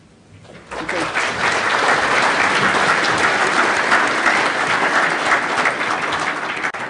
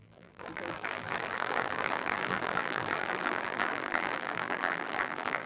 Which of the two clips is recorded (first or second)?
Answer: first